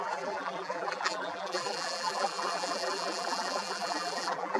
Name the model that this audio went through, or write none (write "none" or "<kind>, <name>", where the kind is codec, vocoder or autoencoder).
vocoder, BigVGAN v2